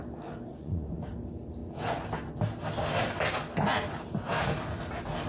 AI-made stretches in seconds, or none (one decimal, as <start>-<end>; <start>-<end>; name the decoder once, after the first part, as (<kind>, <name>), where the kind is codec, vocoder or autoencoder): 0.5-1.1 (vocoder, Vocos)